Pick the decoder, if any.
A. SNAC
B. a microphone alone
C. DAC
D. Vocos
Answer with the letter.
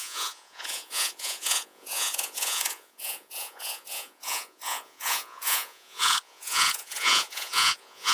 D